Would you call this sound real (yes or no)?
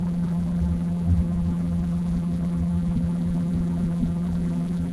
no